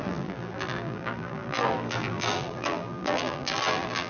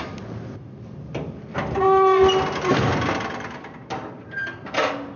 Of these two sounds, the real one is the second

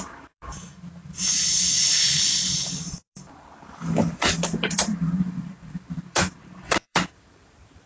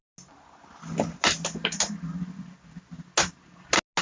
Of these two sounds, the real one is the second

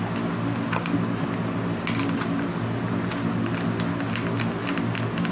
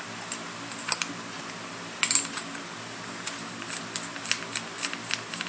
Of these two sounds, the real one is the first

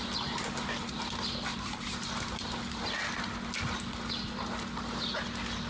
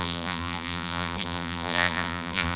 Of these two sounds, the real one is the first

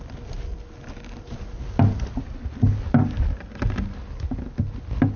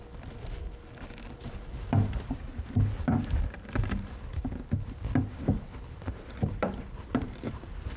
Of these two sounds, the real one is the first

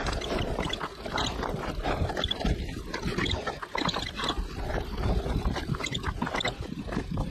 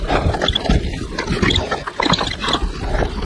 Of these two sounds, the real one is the second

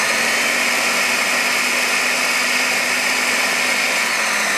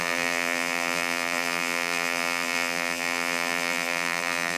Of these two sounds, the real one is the first